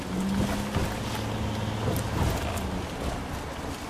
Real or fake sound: real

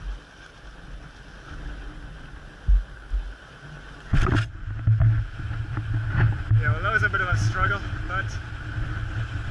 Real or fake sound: real